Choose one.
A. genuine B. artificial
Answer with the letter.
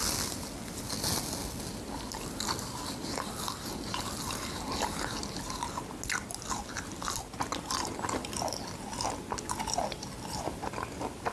A